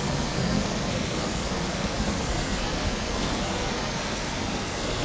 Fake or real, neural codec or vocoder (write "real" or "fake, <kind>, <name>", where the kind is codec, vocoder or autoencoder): fake, codec, SNAC